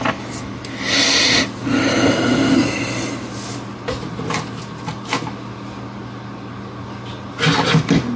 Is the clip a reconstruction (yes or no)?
no